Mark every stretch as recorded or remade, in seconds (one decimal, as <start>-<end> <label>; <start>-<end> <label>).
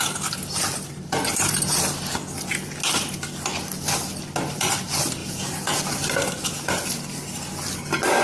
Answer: 0.0-5.2 recorded; 5.2-5.8 remade; 5.8-8.2 recorded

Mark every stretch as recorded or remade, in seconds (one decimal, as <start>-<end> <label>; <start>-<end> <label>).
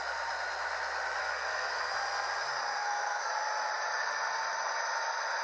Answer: 0.0-1.2 recorded; 1.2-1.9 remade; 1.9-2.8 recorded; 2.8-3.3 remade; 3.3-5.4 recorded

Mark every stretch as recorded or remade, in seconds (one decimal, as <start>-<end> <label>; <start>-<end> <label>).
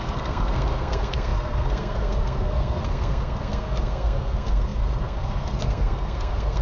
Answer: 0.0-6.6 remade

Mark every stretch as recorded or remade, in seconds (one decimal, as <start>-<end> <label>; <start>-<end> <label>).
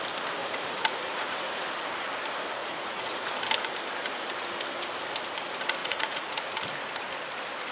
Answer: 0.0-0.4 recorded; 0.4-1.5 remade; 1.5-2.6 recorded; 2.6-3.3 remade; 3.3-5.8 recorded; 5.8-6.4 remade; 6.4-7.7 recorded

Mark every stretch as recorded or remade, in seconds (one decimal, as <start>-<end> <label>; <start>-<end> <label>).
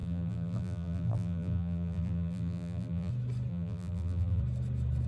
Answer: 0.0-3.1 remade; 3.1-3.5 recorded; 3.5-4.4 remade; 4.4-5.1 recorded